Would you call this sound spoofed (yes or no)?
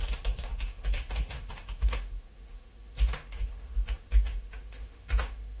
yes